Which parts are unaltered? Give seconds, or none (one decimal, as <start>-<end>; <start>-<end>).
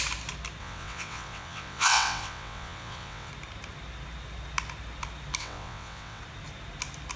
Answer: 0.0-0.6; 3.3-5.4; 6.2-7.2